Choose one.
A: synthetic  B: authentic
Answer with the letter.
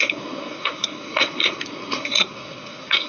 A